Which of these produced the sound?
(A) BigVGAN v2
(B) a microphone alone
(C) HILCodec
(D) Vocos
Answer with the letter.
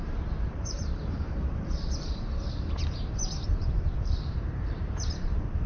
A